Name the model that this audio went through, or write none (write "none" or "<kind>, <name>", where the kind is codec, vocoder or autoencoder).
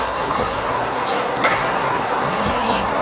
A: codec, SNAC